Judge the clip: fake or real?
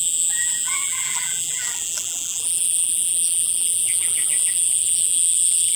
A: fake